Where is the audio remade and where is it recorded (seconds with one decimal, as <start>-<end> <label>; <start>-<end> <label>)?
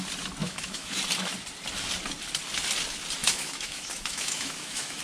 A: 0.0-0.4 recorded; 0.4-0.9 remade; 0.9-3.2 recorded; 3.2-5.0 remade